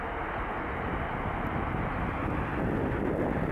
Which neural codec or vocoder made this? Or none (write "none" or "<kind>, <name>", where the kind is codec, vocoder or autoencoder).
none